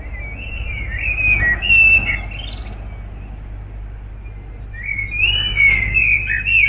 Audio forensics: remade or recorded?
recorded